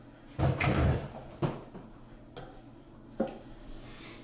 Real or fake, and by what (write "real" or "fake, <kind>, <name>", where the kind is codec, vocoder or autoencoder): real